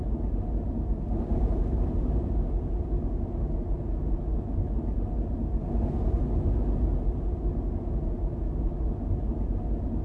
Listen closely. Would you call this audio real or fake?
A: real